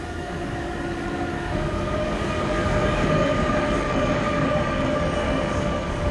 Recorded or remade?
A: remade